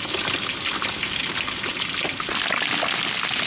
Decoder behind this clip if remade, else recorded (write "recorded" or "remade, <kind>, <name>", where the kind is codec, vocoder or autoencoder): recorded